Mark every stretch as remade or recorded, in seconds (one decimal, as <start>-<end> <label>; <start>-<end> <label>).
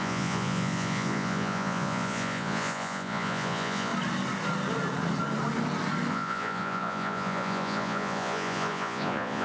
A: 0.0-3.9 remade; 3.9-6.1 recorded; 6.1-9.4 remade